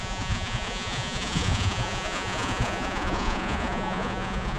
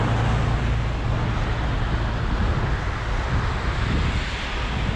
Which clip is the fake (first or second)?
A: first